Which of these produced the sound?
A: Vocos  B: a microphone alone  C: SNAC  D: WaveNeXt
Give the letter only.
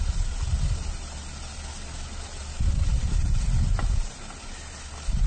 B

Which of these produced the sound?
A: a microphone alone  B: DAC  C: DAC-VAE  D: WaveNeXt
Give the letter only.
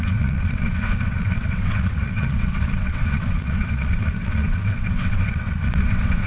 D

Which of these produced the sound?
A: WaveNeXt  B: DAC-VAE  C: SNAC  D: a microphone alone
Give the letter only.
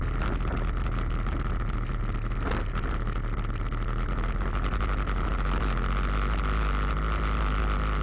D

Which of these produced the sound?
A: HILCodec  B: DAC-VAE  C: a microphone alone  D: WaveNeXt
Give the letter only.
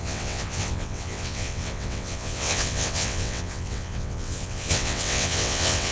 D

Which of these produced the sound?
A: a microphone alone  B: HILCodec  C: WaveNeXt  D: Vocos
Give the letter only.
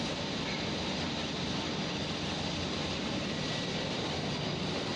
A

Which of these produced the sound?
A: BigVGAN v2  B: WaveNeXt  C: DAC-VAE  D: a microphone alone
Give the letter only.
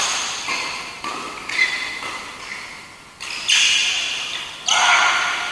D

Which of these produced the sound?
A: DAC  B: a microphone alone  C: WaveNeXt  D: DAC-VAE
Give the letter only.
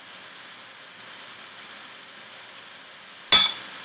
B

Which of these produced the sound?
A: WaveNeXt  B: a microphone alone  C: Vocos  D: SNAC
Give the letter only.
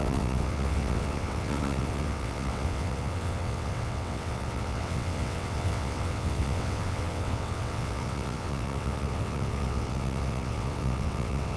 A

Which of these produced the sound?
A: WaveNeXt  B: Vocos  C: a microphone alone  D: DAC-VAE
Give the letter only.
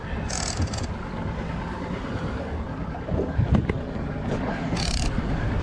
C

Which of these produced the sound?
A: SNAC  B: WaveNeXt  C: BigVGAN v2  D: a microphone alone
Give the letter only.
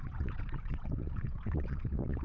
B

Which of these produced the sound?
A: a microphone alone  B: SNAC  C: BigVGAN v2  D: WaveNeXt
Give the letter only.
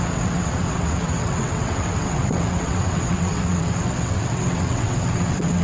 D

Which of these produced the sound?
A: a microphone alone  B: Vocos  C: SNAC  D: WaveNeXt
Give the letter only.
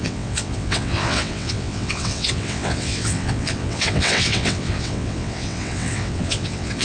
D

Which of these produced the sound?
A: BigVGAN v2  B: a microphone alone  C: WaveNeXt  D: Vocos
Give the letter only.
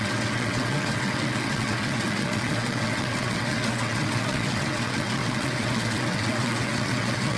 C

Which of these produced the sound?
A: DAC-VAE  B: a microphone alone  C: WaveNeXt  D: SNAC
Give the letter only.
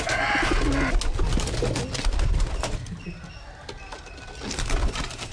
B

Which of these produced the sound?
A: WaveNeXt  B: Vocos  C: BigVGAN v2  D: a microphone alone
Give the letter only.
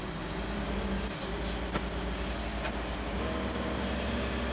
D